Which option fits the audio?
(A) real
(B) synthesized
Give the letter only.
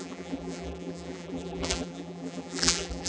B